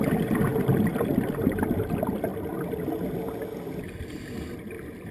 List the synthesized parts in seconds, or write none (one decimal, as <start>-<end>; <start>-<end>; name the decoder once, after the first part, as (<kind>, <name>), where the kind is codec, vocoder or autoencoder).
none